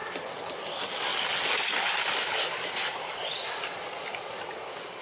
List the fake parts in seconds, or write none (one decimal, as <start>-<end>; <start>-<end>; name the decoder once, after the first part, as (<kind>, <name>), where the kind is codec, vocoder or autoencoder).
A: none